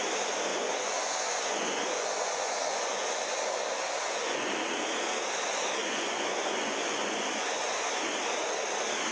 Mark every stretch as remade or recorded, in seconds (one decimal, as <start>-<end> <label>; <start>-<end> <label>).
0.0-0.5 recorded; 0.5-4.5 remade; 4.5-5.8 recorded; 5.8-7.9 remade; 7.9-9.1 recorded